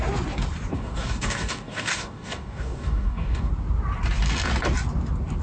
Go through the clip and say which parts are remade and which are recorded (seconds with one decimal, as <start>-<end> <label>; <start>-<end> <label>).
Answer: 0.0-0.7 recorded; 0.7-3.5 remade; 3.5-5.4 recorded